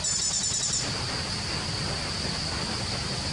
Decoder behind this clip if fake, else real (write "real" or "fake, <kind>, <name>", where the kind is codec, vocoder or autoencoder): real